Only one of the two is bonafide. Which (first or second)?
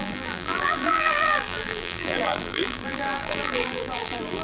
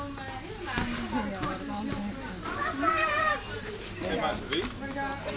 second